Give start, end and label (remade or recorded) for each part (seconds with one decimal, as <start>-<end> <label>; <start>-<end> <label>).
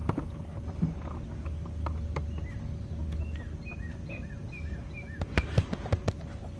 0.0-6.6 recorded